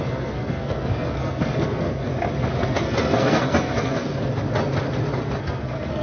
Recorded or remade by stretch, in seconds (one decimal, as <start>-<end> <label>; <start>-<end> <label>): 0.0-2.1 remade; 2.1-2.6 recorded; 2.6-4.1 remade; 4.1-5.4 recorded; 5.4-6.0 remade